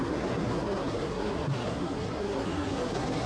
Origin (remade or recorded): remade